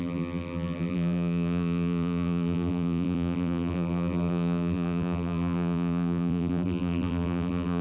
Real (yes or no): no